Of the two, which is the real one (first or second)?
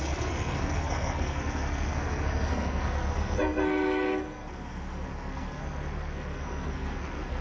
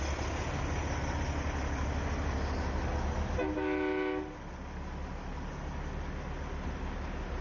second